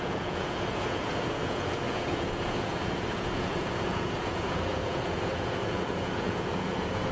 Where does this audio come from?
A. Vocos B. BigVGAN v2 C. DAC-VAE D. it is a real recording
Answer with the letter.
A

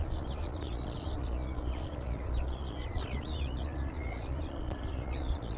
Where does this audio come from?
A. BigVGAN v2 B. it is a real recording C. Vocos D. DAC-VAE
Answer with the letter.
C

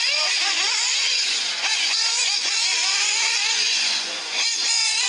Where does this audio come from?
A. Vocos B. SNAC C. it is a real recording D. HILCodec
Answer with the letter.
A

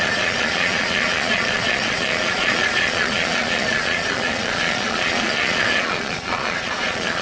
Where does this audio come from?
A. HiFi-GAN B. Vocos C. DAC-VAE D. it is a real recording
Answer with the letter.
B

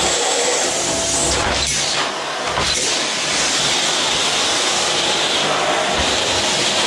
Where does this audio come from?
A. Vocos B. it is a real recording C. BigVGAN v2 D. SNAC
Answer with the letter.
B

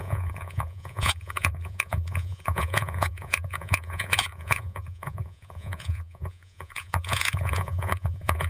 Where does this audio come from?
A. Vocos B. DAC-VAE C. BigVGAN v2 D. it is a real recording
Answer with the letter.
A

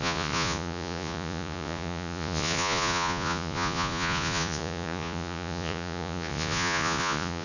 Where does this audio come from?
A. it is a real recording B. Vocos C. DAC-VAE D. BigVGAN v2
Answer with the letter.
B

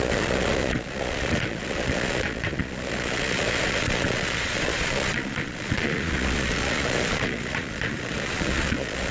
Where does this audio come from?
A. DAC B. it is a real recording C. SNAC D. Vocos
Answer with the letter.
D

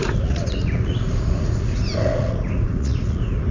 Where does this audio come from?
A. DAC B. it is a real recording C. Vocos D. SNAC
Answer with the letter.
C